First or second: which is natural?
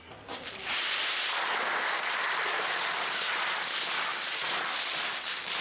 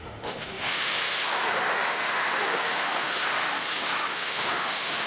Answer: first